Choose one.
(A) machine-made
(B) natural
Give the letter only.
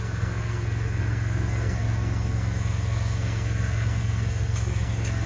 A